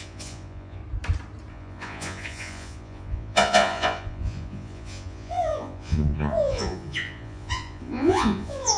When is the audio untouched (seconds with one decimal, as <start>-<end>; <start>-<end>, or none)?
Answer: 0.8-1.5